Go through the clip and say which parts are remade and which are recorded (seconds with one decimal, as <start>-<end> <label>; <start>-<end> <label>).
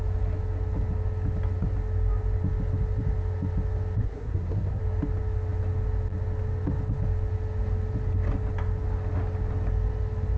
0.0-4.0 recorded; 4.0-4.8 remade; 4.8-10.4 recorded